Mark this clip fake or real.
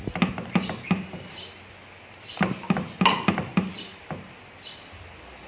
real